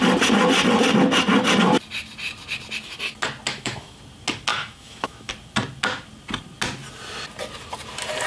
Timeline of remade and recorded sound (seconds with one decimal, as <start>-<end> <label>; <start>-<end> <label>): 0.0-3.5 recorded; 3.5-4.0 remade; 4.0-4.5 recorded; 4.5-5.3 remade; 5.3-8.3 recorded